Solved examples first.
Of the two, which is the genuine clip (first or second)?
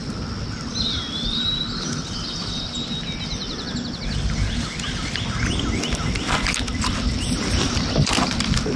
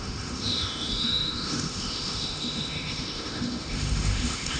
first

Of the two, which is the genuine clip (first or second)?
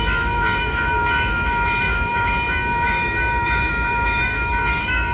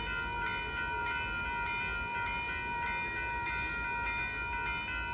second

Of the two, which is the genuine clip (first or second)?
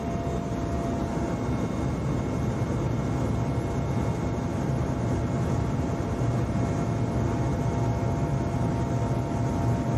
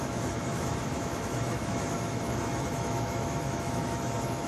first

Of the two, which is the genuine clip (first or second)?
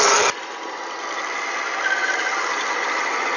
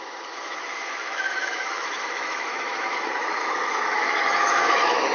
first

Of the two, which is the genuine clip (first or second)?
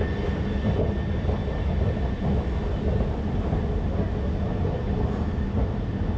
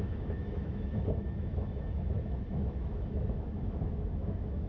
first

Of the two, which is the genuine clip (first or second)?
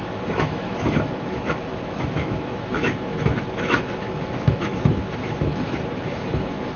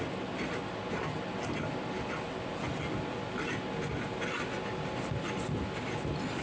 second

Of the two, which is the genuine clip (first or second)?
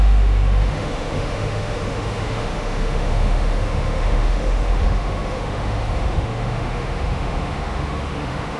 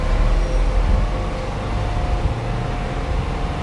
second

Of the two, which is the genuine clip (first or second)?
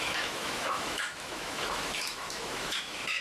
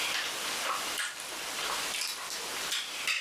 second